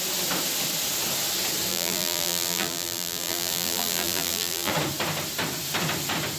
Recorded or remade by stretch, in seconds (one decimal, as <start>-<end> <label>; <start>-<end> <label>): 0.0-1.7 recorded; 1.7-4.7 remade; 4.7-6.4 recorded